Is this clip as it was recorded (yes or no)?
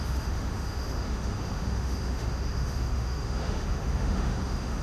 no